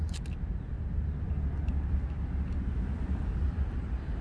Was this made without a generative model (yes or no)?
yes